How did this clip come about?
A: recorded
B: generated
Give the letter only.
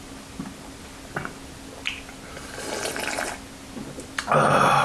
A